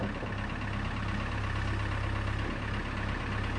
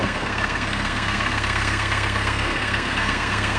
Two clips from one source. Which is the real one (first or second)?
first